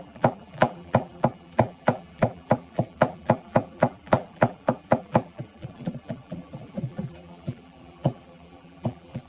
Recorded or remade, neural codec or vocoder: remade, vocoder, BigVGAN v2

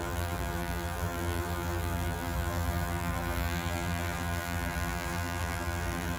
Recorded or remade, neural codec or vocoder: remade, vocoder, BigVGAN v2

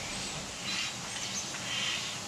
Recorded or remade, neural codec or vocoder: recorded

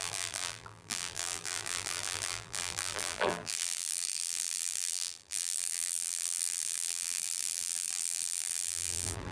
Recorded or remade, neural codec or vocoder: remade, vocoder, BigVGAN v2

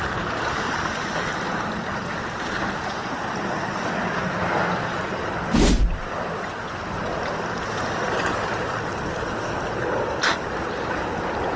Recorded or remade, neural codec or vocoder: recorded